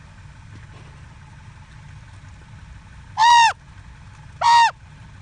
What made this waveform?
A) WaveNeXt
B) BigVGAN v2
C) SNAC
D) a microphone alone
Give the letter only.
D